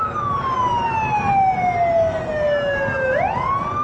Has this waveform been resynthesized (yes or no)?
no